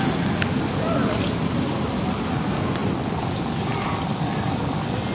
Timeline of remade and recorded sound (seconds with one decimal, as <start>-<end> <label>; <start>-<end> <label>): 0.0-5.1 recorded